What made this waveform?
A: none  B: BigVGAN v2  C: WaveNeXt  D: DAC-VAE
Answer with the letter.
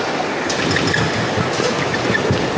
A